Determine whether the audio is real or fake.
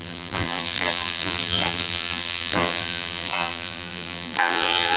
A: fake